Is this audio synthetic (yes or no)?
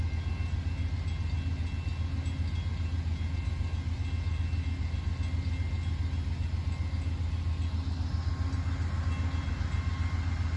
no